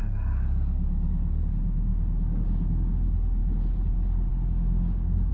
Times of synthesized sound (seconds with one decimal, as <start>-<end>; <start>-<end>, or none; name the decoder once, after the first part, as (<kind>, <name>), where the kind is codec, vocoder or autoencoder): 4.3-5.3 (codec, DAC)